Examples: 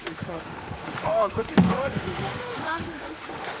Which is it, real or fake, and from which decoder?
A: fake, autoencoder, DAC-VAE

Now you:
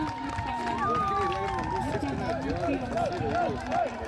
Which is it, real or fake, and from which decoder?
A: real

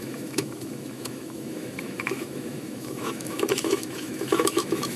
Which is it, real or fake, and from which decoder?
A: fake, autoencoder, DAC-VAE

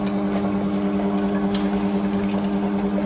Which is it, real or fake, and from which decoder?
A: real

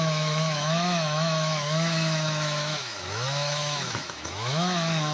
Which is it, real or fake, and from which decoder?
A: fake, autoencoder, DAC-VAE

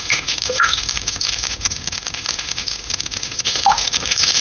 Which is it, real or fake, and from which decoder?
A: fake, autoencoder, DAC-VAE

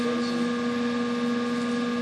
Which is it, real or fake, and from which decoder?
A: real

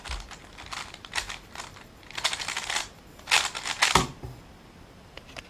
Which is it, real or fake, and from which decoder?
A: real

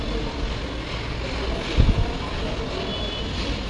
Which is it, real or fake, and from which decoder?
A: real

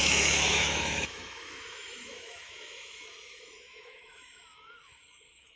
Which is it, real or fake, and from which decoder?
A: fake, autoencoder, DAC-VAE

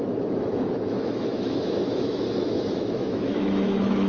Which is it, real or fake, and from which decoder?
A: fake, autoencoder, DAC-VAE